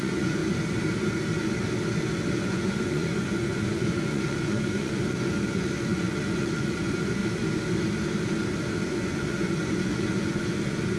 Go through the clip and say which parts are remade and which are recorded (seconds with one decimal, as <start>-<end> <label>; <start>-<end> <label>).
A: 0.0-0.4 remade; 0.4-2.3 recorded; 2.3-7.2 remade; 7.2-8.9 recorded; 8.9-11.0 remade